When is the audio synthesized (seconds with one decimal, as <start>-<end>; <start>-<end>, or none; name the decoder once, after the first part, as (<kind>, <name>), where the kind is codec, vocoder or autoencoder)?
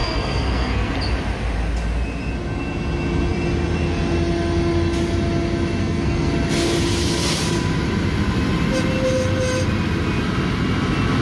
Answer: 0.0-0.9 (codec, SNAC); 5.8-6.3